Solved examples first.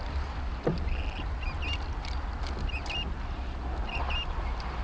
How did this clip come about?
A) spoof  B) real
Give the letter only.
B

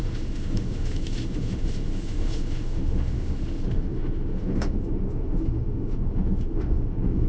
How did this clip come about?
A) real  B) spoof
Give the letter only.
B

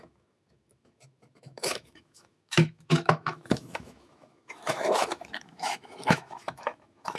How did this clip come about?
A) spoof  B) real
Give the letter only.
A